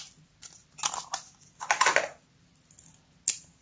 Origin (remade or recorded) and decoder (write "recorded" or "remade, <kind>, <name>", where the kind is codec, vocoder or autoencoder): recorded